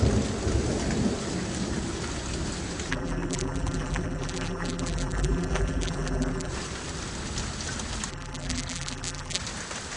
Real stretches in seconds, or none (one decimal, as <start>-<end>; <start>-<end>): 0.0-2.9; 6.5-8.1; 9.4-10.0